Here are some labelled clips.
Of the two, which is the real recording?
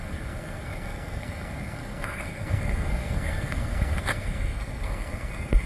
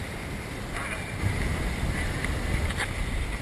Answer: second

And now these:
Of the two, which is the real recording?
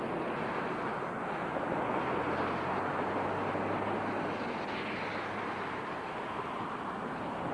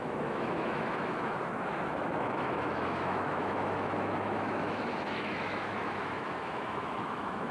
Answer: first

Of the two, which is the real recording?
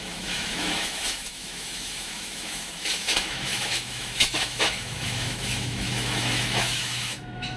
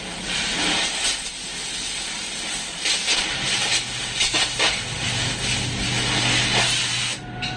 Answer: second